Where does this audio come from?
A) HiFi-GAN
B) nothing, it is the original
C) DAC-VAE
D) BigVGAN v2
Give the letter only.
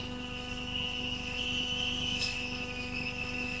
C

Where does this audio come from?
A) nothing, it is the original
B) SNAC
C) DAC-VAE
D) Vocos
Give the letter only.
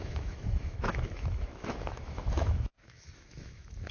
C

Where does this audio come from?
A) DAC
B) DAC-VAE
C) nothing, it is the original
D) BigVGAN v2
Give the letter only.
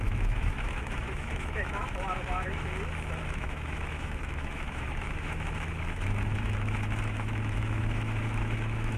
B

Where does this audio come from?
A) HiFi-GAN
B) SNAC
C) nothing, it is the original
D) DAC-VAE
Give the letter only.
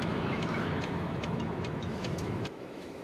D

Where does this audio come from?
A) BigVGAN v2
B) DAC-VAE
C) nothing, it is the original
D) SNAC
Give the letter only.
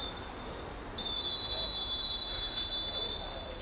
C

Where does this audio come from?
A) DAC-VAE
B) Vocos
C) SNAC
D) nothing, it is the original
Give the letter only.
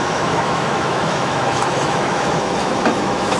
A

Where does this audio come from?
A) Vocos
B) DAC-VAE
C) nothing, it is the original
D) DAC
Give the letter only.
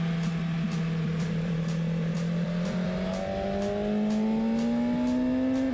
C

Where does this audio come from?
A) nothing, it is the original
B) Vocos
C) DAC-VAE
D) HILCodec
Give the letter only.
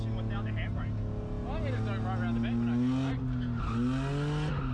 A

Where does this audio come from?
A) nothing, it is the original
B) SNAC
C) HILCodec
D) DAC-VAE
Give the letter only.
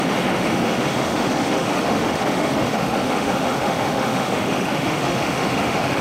D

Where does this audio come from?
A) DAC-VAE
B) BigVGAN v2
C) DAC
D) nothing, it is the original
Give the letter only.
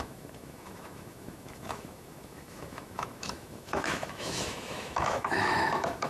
A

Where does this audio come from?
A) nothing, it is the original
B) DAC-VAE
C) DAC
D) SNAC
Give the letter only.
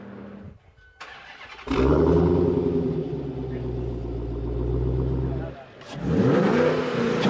A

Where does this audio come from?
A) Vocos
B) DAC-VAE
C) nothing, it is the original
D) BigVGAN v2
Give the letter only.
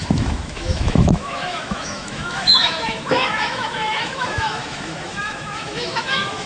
B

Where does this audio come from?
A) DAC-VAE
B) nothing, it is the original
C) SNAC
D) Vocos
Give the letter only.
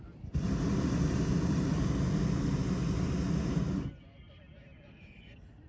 B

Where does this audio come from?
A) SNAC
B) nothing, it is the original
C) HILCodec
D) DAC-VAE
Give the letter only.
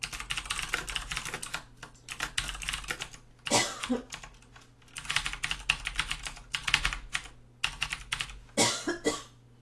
B